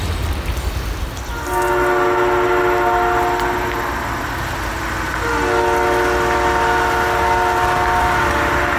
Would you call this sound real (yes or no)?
yes